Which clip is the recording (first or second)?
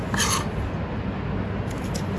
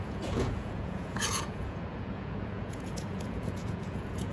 first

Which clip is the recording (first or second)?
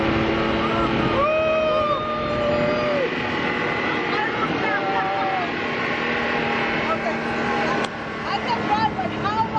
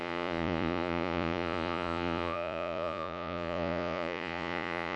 first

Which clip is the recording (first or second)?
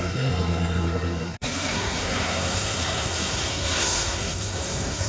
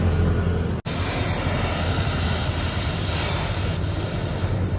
second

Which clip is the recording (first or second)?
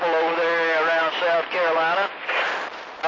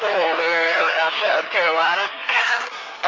first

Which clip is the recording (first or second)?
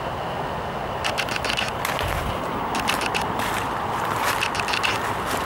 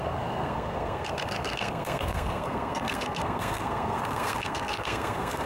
first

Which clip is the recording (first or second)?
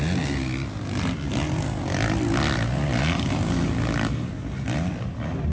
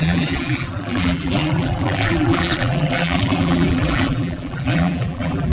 first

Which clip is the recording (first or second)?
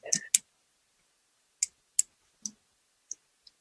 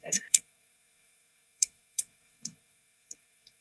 first